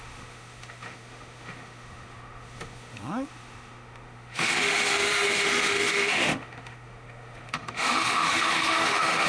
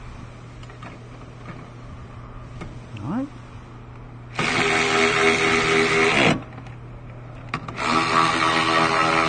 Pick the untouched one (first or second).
second